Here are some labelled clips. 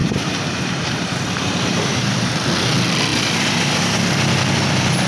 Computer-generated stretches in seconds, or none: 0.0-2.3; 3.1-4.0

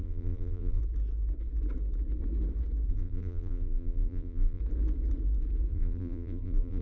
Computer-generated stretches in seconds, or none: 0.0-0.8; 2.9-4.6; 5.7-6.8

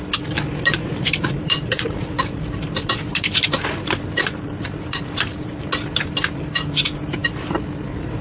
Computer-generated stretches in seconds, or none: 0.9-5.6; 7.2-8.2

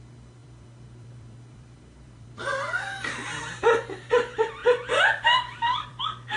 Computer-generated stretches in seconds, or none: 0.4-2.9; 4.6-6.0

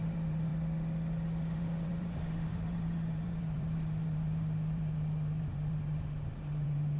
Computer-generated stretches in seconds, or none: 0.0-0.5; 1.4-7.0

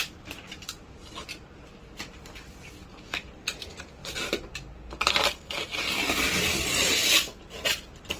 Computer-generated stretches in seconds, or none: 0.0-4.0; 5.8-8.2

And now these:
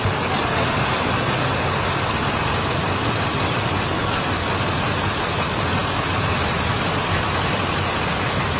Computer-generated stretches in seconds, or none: none

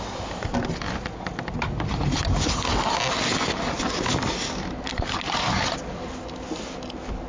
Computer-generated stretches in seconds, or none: none